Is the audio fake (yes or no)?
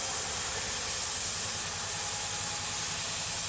no